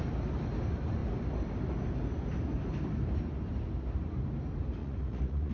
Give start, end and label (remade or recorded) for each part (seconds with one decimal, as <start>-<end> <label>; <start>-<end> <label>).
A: 0.0-4.8 recorded; 4.8-5.5 remade